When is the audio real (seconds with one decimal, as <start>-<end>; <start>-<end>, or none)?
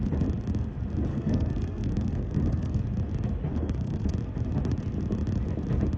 0.0-1.1; 2.8-3.5; 4.1-6.0